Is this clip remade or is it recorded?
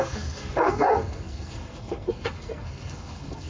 remade